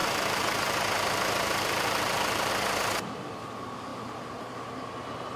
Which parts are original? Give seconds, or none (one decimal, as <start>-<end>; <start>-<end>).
2.5-3.9